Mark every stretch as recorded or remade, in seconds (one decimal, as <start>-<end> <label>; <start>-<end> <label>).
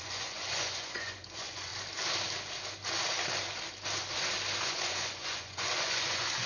0.0-1.7 remade; 1.7-4.6 recorded; 4.6-6.5 remade